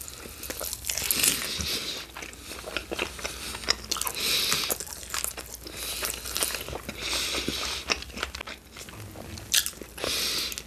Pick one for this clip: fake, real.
real